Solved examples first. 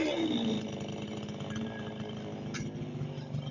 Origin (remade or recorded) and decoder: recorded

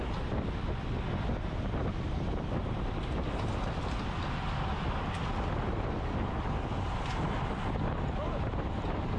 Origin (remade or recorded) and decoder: recorded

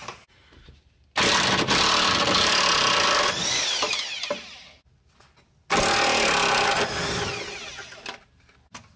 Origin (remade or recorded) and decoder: recorded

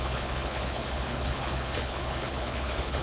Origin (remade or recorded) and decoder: remade, codec, HILCodec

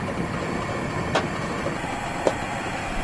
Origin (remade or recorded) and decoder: recorded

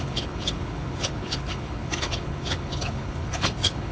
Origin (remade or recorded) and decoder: remade, codec, HILCodec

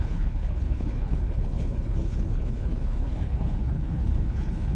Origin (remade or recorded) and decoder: remade, codec, HILCodec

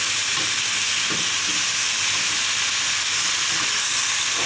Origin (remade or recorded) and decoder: recorded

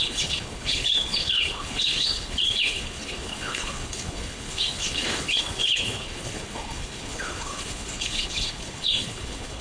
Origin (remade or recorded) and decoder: remade, codec, HILCodec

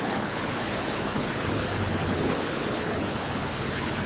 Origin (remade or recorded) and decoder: remade, codec, HILCodec